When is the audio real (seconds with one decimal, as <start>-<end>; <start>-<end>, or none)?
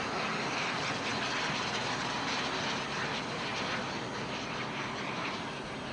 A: 0.0-5.9